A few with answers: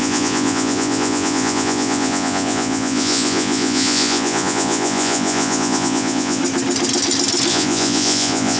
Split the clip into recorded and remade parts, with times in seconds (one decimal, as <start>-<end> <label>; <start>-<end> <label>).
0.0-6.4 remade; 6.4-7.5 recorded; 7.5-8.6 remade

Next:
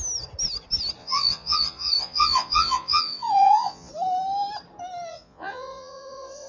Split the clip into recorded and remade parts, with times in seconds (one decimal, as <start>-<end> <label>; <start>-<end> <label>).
0.0-1.0 recorded; 1.0-3.9 remade; 3.9-5.1 recorded; 5.1-6.5 remade

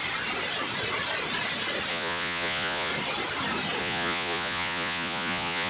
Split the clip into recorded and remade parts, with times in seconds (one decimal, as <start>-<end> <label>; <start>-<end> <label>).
0.0-1.9 recorded; 1.9-2.9 remade; 2.9-3.8 recorded; 3.8-5.7 remade